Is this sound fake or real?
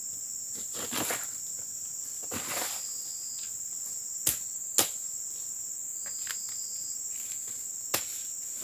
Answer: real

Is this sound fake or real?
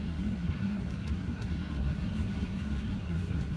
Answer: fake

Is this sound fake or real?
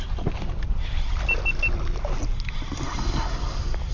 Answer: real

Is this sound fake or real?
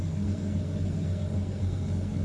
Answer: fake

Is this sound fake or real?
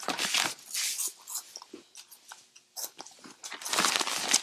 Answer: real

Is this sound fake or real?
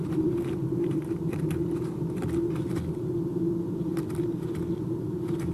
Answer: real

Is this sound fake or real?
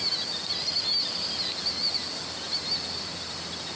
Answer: real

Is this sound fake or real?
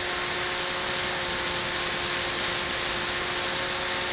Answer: real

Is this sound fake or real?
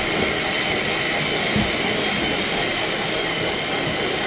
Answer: real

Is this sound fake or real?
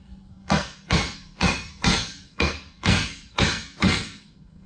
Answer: fake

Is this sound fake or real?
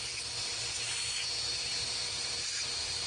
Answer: real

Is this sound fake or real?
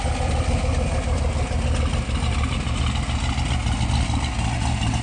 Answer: real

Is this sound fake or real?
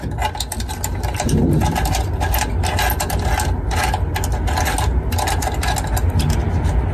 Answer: real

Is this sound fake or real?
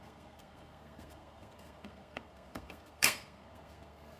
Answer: fake